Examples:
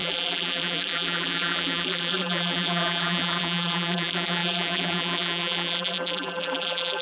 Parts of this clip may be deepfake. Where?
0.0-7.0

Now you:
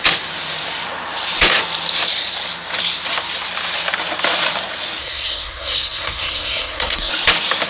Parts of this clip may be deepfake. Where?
5.0-7.1

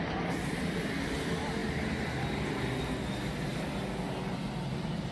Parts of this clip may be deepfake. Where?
none

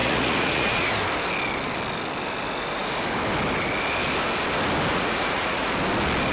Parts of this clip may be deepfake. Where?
0.0-0.9; 4.9-5.7

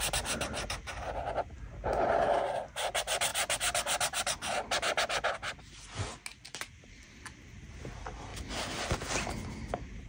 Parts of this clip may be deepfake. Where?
6.3-7.2

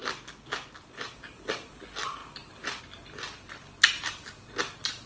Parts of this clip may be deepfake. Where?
none